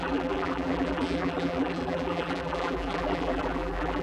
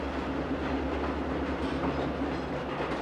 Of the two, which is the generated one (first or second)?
first